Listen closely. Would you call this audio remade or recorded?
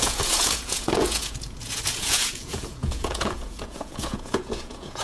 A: remade